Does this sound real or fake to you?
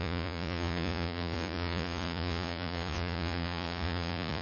fake